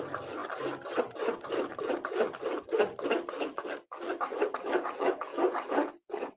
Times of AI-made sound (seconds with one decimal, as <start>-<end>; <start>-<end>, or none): none